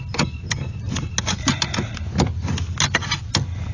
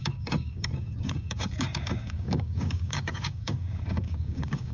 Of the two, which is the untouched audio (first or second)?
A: first